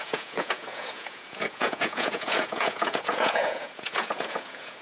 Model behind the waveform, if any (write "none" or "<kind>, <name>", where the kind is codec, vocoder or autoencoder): vocoder, Vocos